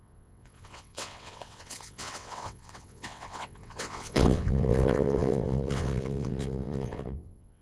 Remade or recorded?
remade